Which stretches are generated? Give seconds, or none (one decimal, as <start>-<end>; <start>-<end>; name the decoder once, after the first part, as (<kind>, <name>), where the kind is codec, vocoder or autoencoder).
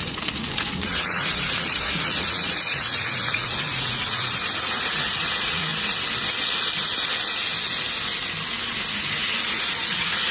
0.0-5.7 (vocoder, Vocos); 9.5-10.3